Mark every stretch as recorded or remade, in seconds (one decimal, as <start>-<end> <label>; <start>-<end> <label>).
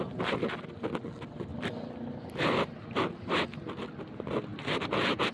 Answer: 0.0-1.5 recorded; 1.5-3.0 remade; 3.0-4.5 recorded; 4.5-5.3 remade